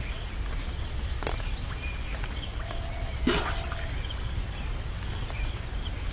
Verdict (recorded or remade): recorded